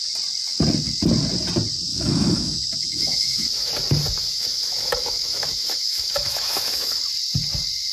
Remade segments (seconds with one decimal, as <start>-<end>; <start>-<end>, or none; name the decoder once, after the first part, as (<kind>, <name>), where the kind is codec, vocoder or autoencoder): 1.9-3.7 (autoencoder, DAC-VAE); 4.2-7.0